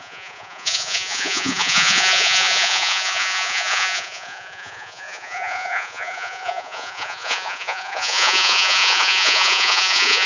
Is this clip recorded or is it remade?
remade